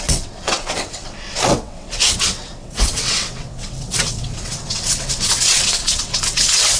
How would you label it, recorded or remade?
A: remade